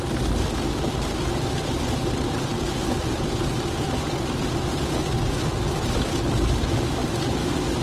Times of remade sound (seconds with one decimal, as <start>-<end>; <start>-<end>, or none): none

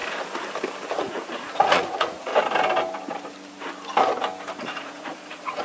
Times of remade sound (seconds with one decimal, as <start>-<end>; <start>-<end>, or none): 1.0-2.3; 4.6-5.6

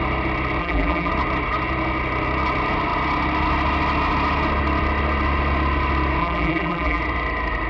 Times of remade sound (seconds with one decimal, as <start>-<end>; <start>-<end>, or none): 0.6-1.1; 6.2-7.0

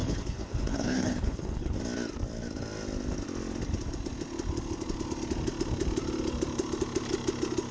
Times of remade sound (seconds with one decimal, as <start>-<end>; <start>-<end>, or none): 0.0-1.8